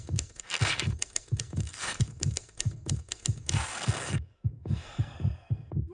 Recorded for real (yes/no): no